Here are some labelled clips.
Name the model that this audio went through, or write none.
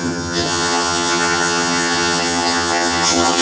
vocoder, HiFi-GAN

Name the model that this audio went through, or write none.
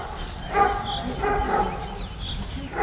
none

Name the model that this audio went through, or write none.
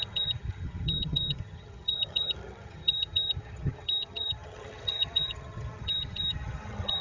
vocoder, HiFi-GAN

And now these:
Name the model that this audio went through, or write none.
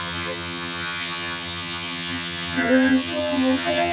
vocoder, HiFi-GAN